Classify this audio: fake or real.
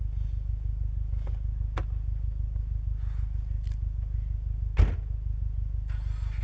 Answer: real